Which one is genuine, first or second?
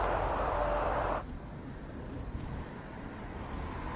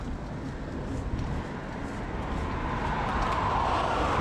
second